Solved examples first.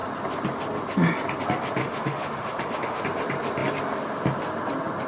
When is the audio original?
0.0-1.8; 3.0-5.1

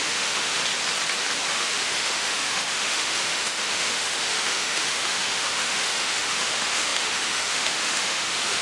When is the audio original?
0.6-1.5

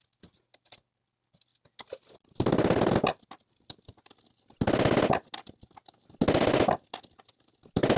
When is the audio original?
0.0-8.0

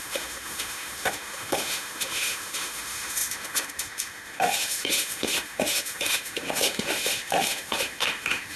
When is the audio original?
none

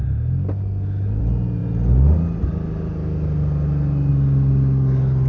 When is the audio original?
0.0-5.3

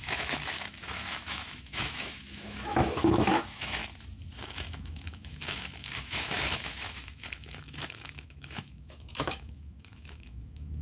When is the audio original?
3.8-4.4